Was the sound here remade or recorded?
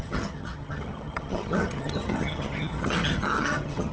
remade